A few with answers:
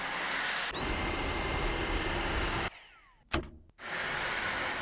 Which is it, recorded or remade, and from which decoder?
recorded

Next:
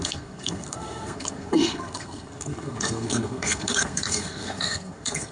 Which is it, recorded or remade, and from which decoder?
remade, codec, SNAC